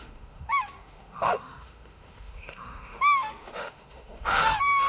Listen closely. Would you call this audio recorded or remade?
remade